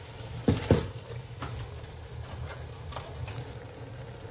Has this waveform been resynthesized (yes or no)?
no